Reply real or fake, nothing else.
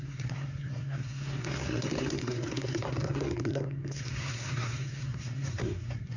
fake